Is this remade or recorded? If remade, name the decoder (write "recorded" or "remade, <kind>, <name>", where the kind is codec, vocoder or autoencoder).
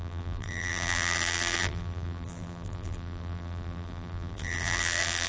remade, vocoder, BigVGAN v2